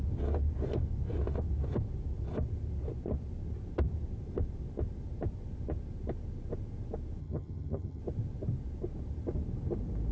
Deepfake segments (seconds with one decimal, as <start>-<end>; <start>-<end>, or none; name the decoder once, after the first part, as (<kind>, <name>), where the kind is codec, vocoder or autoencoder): 7.2-8.0 (vocoder, HiFi-GAN)

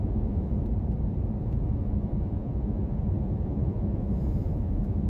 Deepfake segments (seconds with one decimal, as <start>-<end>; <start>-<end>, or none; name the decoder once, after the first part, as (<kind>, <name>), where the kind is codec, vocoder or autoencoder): 0.0-0.6 (vocoder, Vocos); 1.4-5.1

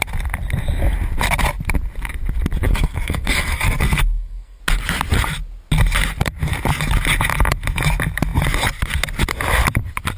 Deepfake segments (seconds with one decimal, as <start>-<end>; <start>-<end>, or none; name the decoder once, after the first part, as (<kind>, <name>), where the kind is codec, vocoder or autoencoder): 2.7-4.6 (codec, SNAC)

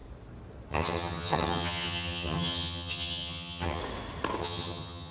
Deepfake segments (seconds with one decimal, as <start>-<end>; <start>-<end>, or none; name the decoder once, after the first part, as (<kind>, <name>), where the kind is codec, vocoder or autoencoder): 0.7-3.8 (vocoder, HiFi-GAN); 4.4-5.1

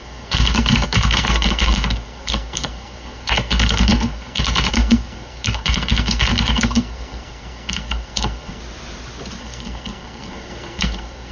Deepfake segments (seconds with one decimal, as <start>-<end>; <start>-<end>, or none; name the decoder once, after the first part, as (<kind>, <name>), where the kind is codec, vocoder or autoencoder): 0.0-8.6 (codec, SNAC); 9.4-11.3

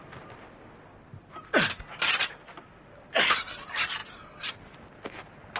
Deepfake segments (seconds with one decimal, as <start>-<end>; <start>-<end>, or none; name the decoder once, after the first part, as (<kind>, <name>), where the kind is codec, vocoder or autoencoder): none

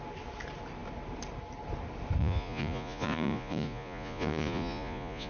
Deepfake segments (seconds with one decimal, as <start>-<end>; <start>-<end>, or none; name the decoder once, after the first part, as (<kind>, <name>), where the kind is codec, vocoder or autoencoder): 2.2-5.3 (vocoder, Vocos)